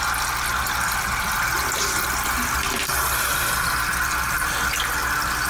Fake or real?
real